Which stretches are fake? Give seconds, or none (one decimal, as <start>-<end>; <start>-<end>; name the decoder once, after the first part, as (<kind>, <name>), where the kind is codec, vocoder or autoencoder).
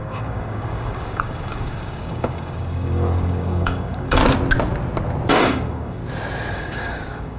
0.0-4.2 (codec, DAC); 5.3-6.0; 6.5-7.4